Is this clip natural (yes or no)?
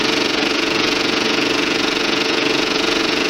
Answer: no